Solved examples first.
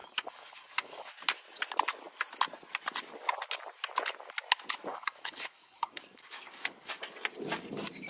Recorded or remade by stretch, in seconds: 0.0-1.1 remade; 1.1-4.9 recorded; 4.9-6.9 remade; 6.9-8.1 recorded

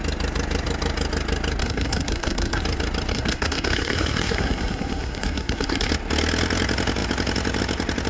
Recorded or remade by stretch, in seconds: 0.0-1.6 recorded; 1.6-2.6 remade; 2.6-3.1 recorded; 3.1-5.9 remade; 5.9-8.1 recorded